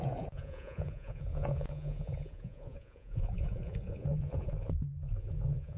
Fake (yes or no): yes